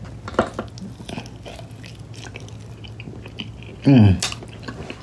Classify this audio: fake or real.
real